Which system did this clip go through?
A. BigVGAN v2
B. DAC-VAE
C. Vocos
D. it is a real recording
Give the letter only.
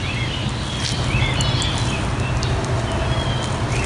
D